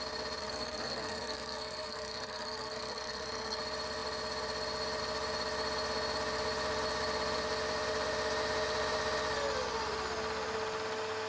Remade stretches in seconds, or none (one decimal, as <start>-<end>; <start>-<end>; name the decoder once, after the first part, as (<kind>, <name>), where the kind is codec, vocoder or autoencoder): 0.4-3.6 (codec, SNAC)